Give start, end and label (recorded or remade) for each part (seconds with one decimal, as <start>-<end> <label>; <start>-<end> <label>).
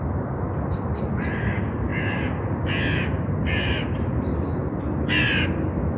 0.0-6.0 recorded